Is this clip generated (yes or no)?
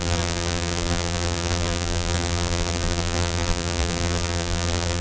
yes